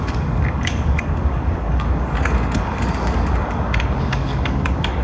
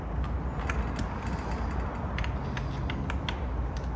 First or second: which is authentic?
second